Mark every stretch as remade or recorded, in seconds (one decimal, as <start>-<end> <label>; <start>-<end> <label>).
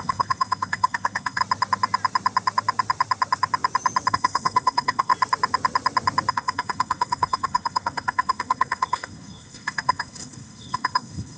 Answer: 0.0-1.4 remade; 1.4-4.1 recorded; 4.1-5.1 remade; 5.1-6.3 recorded; 6.3-11.4 remade